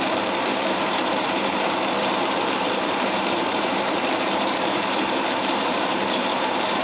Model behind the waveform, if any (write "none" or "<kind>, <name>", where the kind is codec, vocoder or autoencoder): vocoder, BigVGAN v2